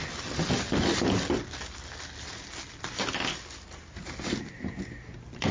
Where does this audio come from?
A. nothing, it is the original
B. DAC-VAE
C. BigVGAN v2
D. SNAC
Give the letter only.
A